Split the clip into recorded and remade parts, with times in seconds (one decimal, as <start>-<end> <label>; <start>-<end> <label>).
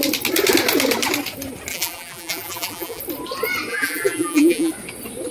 0.0-1.7 recorded; 1.7-3.0 remade; 3.0-3.7 recorded; 3.7-4.7 remade; 4.7-5.3 recorded